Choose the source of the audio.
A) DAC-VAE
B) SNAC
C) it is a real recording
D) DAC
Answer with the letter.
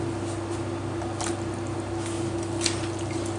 C